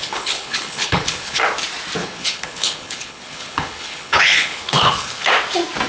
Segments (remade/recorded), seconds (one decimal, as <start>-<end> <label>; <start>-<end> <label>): 0.0-1.4 remade; 1.4-2.0 recorded; 2.0-5.3 remade; 5.3-5.9 recorded